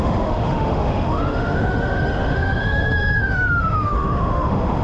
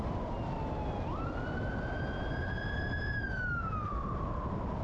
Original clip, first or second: second